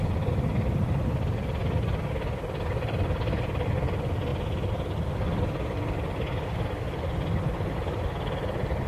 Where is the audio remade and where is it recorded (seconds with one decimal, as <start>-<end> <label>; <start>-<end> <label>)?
0.0-8.9 recorded